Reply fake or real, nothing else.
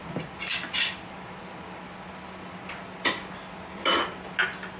real